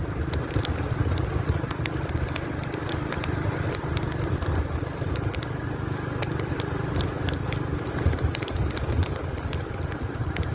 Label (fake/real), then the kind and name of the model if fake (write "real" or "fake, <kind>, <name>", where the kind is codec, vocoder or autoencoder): real